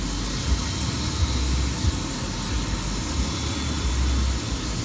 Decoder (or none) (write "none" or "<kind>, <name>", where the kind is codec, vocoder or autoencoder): none